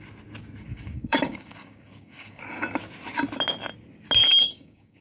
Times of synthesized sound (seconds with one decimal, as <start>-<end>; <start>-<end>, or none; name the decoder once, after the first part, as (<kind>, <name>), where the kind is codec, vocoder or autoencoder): 0.7-2.4 (codec, DAC); 4.2-5.0